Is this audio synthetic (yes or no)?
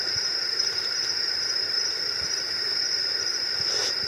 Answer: yes